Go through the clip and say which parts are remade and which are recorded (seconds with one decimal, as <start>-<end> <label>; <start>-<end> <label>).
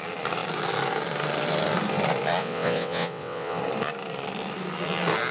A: 0.0-2.4 recorded; 2.4-3.6 remade; 3.6-5.3 recorded